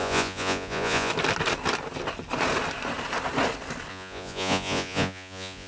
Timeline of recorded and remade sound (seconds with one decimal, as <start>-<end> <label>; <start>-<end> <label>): 0.0-1.1 remade; 1.1-3.9 recorded; 3.9-5.7 remade